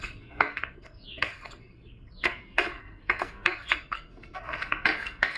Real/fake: fake